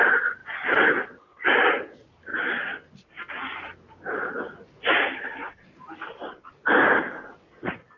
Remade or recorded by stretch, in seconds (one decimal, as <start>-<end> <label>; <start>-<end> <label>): 0.0-8.0 recorded